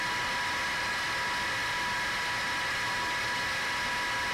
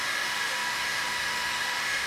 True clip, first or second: first